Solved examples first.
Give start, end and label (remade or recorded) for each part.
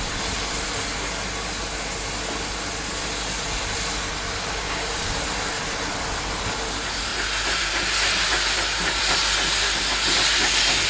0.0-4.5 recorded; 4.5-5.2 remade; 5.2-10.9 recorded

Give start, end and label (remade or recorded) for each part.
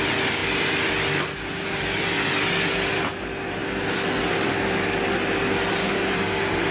0.0-5.8 recorded; 5.8-6.7 remade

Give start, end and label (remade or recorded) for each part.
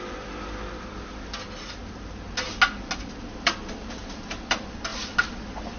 0.0-5.8 recorded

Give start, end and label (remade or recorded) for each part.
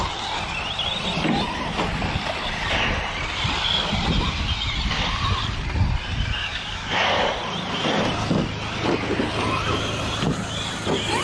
0.0-6.4 recorded; 6.4-7.3 remade; 7.3-11.2 recorded